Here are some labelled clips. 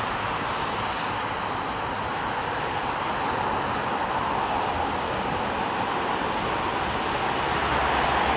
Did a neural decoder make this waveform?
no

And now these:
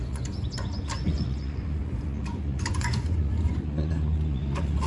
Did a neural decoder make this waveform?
yes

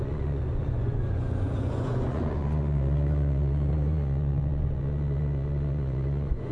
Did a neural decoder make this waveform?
yes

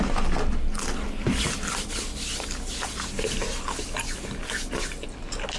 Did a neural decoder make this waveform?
no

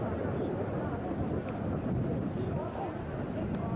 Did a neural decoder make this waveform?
no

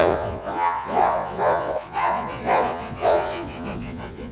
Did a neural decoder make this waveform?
yes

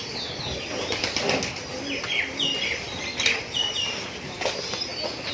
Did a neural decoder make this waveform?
no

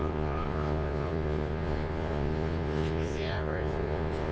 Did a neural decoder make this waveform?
yes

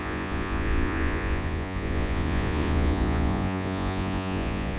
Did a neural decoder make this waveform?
yes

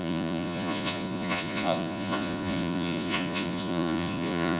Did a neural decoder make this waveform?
yes